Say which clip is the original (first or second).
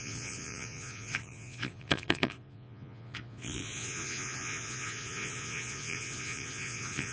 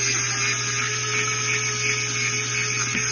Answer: second